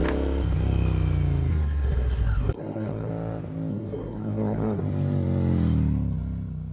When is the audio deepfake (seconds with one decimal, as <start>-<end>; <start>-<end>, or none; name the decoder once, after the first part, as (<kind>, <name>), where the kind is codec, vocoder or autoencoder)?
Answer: 1.5-3.1 (codec, SNAC); 3.7-4.8